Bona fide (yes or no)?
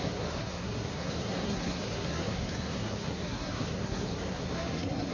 no